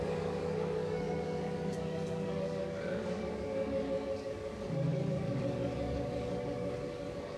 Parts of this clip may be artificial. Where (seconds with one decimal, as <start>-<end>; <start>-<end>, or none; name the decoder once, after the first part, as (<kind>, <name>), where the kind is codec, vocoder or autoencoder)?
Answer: 0.0-7.4 (codec, DAC)